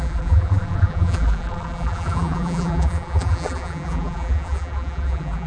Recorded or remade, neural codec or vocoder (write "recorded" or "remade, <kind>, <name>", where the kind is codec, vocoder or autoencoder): remade, vocoder, BigVGAN v2